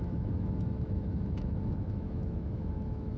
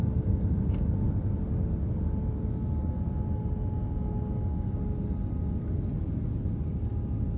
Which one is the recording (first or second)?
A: second